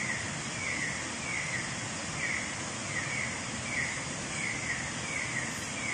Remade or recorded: recorded